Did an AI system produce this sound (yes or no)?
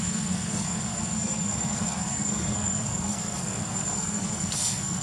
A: yes